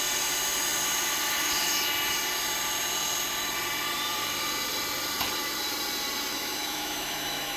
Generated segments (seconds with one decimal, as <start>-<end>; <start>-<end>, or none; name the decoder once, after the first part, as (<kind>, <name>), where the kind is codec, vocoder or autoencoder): 6.3-7.6 (autoencoder, DAC-VAE)